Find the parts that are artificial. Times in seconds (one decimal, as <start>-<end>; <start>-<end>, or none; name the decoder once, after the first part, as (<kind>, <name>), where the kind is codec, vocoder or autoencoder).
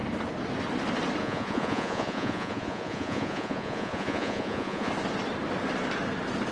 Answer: 1.2-4.9 (vocoder, Vocos)